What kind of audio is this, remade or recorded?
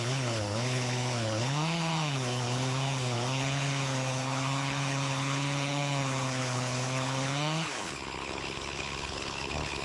remade